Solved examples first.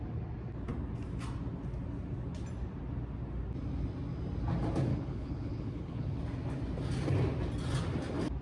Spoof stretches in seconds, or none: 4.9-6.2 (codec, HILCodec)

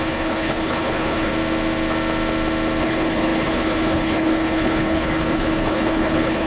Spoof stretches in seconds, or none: 0.0-1.3 (codec, HILCodec); 2.8-6.5

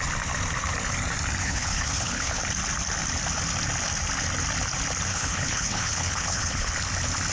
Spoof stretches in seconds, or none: 1.4-2.4 (codec, HILCodec); 5.1-6.7

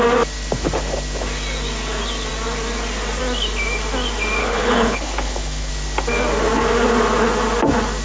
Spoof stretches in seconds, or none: 4.4-5.7 (codec, HILCodec)